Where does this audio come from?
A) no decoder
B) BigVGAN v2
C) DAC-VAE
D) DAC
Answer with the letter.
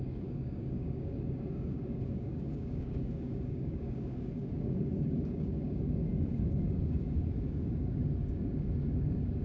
D